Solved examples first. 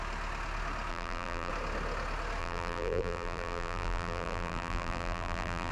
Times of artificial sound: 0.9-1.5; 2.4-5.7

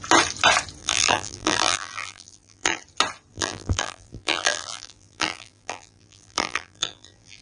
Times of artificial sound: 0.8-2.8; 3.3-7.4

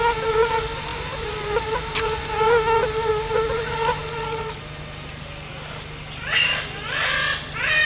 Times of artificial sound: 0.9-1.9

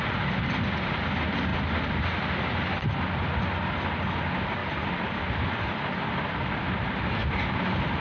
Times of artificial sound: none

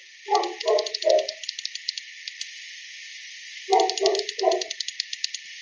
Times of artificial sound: 3.1-3.6

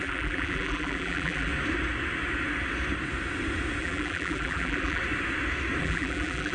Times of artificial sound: 0.0-1.5; 3.8-5.0; 5.8-6.5

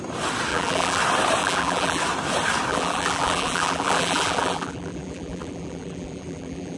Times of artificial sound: 0.5-1.0; 1.4-2.0; 2.7-6.8

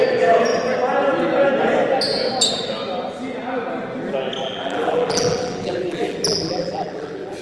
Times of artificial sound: 4.4-7.4